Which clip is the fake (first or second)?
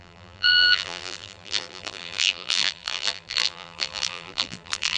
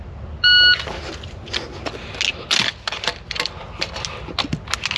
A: first